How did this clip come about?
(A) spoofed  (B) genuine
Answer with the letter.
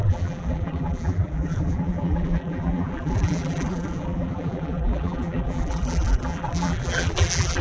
A